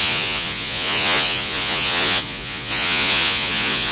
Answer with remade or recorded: remade